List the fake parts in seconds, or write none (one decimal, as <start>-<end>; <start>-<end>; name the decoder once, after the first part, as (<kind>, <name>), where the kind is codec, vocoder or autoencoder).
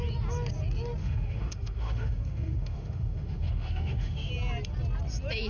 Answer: 1.0-4.3 (autoencoder, DAC-VAE)